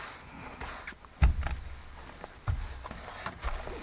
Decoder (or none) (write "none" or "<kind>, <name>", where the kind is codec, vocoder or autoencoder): none